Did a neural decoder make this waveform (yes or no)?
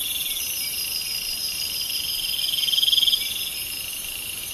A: no